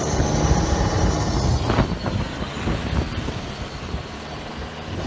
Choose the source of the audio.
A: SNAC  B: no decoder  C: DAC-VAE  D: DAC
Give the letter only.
B